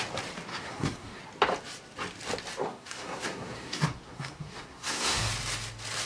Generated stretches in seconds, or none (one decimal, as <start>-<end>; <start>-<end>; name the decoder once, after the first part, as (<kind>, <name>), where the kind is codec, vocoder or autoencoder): 0.5-1.2 (codec, SNAC); 2.6-5.3